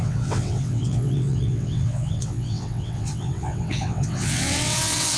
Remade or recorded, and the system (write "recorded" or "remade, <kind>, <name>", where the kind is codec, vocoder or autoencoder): remade, vocoder, WaveNeXt